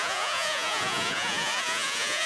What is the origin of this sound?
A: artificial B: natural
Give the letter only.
A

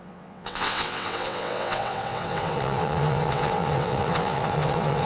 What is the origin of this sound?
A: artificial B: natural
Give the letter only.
A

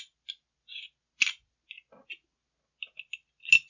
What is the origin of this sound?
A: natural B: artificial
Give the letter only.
A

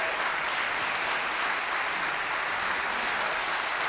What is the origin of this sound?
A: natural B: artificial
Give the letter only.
A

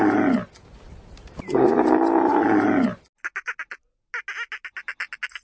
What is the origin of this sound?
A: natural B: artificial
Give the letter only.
A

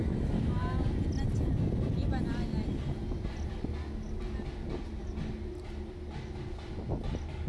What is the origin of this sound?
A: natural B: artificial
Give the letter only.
A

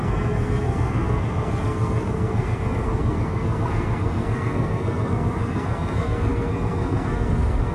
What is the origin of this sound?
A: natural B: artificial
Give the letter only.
B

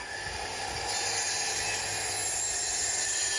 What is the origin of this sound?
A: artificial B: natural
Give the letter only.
B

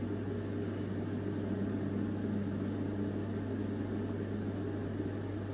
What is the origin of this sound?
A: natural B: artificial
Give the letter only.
A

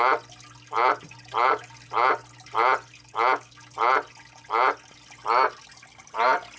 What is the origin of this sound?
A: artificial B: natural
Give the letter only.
B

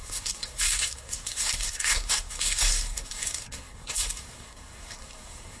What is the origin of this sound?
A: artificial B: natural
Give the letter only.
A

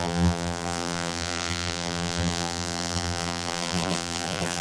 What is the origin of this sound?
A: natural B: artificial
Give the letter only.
B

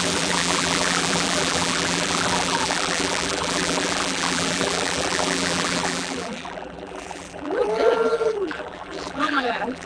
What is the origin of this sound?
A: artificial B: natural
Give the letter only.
A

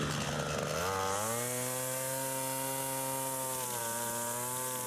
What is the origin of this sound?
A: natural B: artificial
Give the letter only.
A